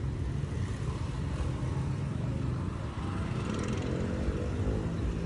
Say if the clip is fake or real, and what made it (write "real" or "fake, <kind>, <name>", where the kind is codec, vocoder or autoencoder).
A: real